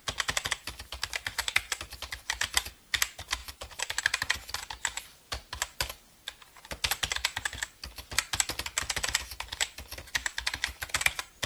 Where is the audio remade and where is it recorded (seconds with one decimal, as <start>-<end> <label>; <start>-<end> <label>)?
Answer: 0.0-3.4 recorded; 3.4-4.0 remade; 4.0-11.5 recorded